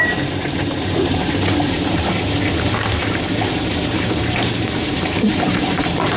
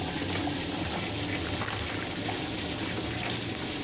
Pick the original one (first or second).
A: second